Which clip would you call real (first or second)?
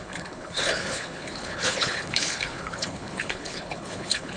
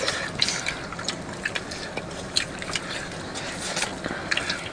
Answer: second